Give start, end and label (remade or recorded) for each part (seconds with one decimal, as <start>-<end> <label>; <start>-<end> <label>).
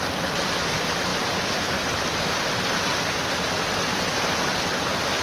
0.0-5.2 recorded